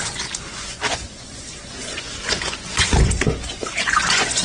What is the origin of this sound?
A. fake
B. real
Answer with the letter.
A